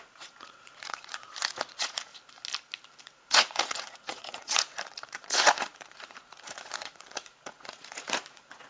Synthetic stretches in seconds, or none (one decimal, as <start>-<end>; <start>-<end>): 0.0-2.1; 3.0-8.7